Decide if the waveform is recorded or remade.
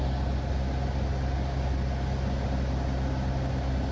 recorded